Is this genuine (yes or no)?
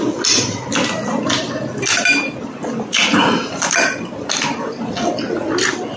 yes